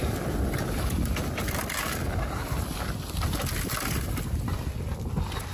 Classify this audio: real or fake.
real